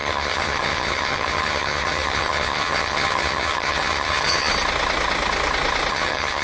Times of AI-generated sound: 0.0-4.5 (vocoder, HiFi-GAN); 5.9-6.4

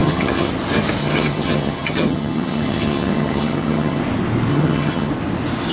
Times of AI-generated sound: 0.0-0.5 (vocoder, HiFi-GAN); 1.0-4.0; 4.5-5.1